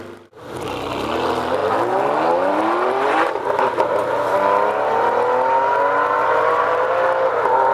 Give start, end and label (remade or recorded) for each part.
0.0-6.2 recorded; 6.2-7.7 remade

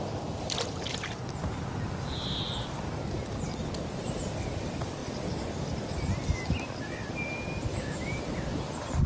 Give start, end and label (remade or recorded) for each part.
0.0-7.7 recorded; 7.7-8.2 remade; 8.2-9.1 recorded

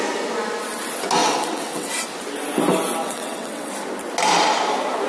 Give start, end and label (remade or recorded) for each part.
0.0-1.2 recorded; 1.2-1.9 remade; 1.9-3.0 recorded; 3.0-3.7 remade; 3.7-5.1 recorded

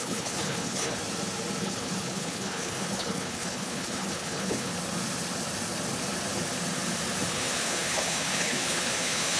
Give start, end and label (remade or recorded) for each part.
0.0-1.0 remade; 1.0-1.6 recorded; 1.6-4.7 remade; 4.7-7.3 recorded; 7.3-9.4 remade

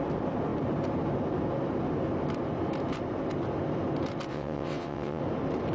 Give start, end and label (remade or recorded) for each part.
0.0-4.3 recorded; 4.3-5.2 remade; 5.2-5.7 recorded

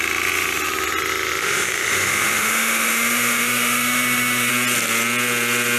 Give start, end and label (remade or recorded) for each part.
0.0-1.4 recorded; 1.4-4.5 remade; 4.5-5.8 recorded

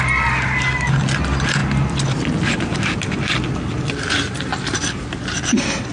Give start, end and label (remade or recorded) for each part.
0.0-5.9 recorded